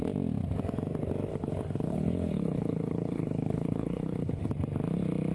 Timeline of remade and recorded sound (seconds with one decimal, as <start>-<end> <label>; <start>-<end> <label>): 0.0-1.3 recorded; 1.3-4.5 remade; 4.5-5.3 recorded